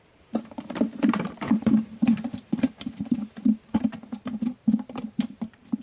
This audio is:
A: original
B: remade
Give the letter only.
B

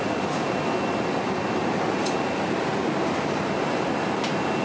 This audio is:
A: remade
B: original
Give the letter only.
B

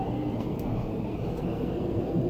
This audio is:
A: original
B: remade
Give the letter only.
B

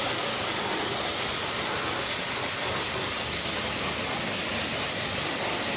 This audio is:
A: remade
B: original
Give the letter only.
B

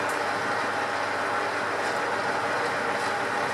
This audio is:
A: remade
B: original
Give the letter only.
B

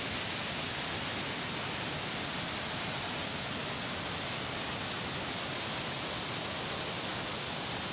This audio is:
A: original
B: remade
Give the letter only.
A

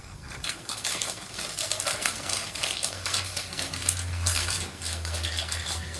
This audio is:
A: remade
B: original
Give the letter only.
A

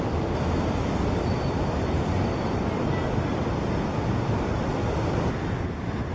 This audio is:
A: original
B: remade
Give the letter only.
A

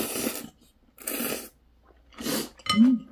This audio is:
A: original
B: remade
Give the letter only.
A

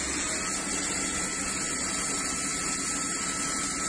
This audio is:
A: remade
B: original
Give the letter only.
B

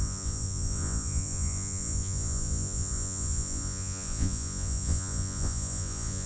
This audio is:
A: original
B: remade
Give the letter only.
B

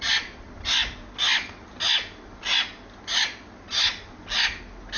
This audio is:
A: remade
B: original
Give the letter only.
B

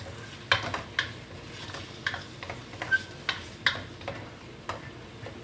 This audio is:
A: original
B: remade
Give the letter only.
A